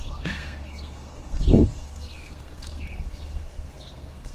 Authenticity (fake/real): fake